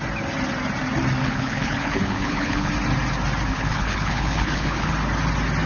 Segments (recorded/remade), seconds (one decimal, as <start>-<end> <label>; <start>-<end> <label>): 0.0-1.2 recorded; 1.2-2.7 remade; 2.7-3.5 recorded; 3.5-4.9 remade; 4.9-5.7 recorded